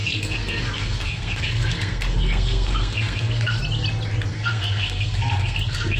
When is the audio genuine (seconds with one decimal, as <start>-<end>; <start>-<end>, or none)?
3.6-4.3